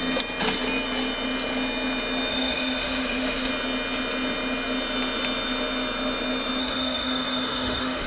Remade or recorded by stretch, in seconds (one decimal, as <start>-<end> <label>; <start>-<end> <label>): 0.0-2.3 recorded; 2.3-3.5 remade; 3.5-6.6 recorded; 6.6-8.1 remade